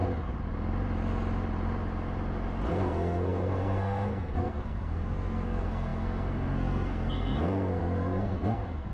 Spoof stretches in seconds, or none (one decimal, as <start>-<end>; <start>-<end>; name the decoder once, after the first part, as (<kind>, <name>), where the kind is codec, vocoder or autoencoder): 2.7-8.9 (codec, SNAC)